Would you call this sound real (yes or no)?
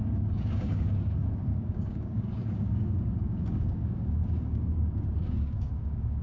no